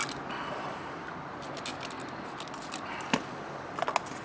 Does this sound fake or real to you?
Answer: real